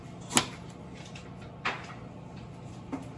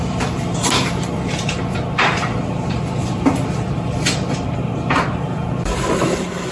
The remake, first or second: second